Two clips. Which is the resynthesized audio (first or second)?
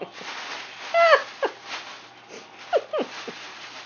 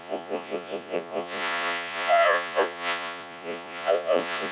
second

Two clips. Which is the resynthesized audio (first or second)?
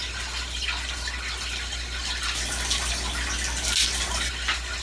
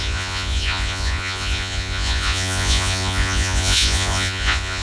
second